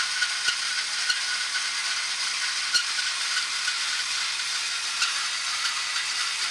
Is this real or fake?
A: real